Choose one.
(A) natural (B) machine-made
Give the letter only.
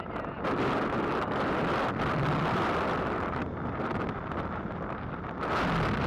B